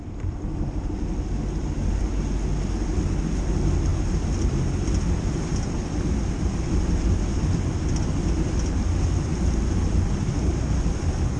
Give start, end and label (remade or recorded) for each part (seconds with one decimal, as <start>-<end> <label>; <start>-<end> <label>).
0.0-11.4 recorded